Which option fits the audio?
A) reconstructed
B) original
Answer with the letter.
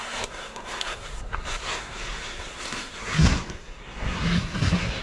A